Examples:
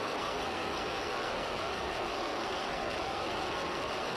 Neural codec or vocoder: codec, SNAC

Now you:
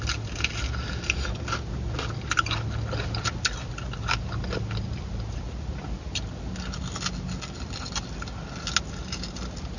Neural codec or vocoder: none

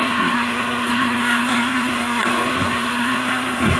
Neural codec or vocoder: codec, SNAC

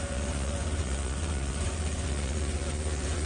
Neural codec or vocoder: vocoder, Vocos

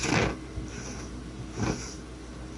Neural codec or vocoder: none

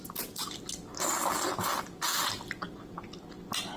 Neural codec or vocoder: none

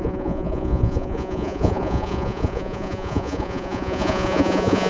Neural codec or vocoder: vocoder, Vocos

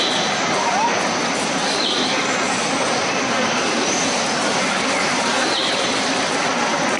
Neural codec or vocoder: none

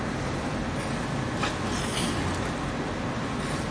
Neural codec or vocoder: none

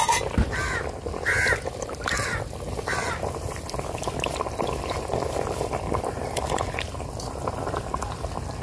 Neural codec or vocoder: vocoder, BigVGAN v2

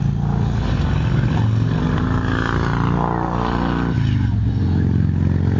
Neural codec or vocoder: none